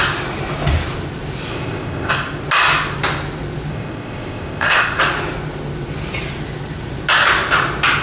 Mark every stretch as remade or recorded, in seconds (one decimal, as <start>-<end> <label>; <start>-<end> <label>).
0.0-1.5 recorded; 1.5-2.1 remade; 2.1-3.7 recorded; 3.7-5.0 remade; 5.0-8.0 recorded